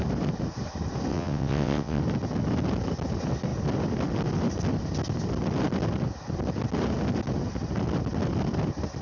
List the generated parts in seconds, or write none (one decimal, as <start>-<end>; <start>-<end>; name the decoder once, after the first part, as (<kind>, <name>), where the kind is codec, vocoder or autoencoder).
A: 1.1-2.0 (vocoder, WaveNeXt)